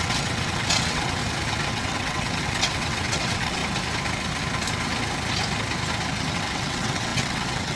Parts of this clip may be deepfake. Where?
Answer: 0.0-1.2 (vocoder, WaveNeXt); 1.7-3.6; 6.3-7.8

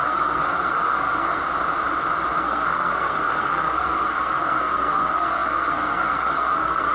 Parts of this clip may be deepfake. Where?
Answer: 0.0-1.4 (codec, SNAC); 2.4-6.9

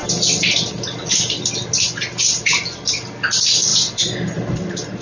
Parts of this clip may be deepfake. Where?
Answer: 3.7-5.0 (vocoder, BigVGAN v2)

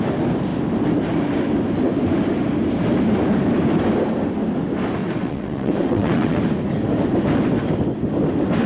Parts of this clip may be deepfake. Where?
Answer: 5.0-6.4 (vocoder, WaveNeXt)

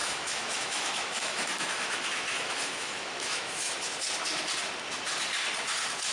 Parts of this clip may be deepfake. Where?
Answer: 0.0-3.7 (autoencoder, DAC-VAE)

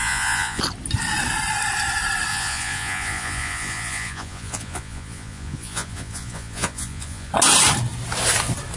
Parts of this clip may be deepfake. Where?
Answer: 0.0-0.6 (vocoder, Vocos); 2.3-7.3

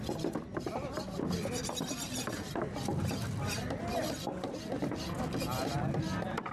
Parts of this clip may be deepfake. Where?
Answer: none